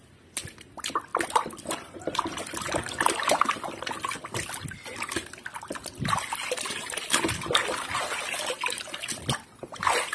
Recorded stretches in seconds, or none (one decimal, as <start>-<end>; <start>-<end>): 0.0-1.1; 2.0-10.1